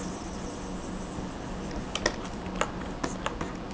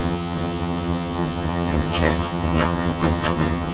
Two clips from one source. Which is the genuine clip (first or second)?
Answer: first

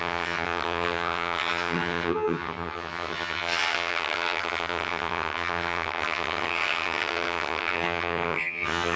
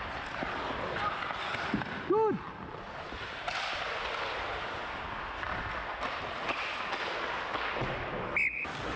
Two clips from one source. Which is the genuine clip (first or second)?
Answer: second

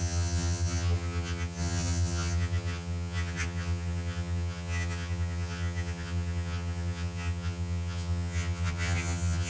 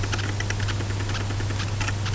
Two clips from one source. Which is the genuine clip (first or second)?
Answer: second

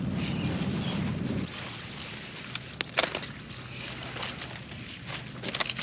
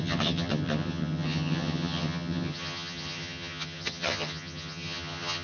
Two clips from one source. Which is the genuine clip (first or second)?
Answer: first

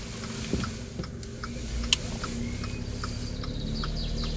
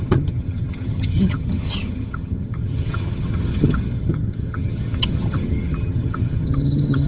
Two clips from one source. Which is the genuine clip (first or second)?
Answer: first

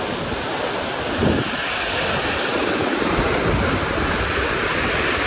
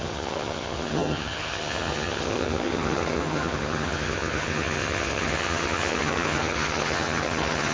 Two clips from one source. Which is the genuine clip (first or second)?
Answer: first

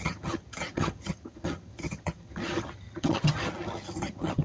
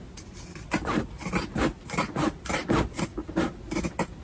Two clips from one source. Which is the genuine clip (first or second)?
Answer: second